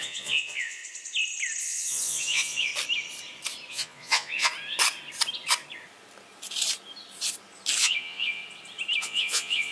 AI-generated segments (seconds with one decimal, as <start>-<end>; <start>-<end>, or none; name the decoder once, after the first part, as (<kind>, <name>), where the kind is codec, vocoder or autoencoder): 0.0-0.8 (vocoder, Vocos); 1.6-2.7; 3.7-4.5; 7.8-8.4; 9.0-9.7